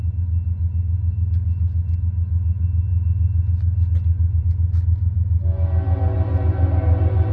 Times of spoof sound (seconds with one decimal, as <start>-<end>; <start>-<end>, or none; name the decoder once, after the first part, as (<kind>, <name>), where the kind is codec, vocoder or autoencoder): none